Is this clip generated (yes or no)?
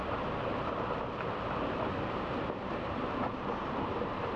yes